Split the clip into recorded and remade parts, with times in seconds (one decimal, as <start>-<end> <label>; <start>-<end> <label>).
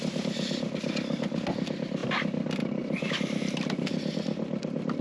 0.0-5.0 recorded